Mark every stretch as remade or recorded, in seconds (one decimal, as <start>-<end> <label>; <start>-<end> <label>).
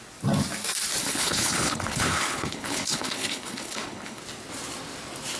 0.0-1.0 recorded; 1.0-4.2 remade; 4.2-5.4 recorded